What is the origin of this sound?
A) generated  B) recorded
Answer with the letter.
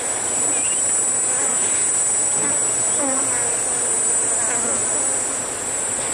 B